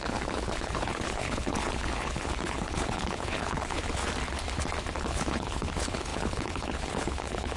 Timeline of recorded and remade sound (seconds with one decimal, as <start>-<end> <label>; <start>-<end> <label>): 0.0-4.0 remade; 4.0-5.0 recorded; 5.0-7.6 remade